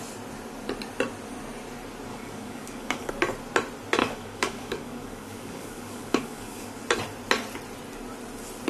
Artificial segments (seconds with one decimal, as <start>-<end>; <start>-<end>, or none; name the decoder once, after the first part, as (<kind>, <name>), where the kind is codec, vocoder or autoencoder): 2.1-3.1 (codec, DAC); 4.0-6.8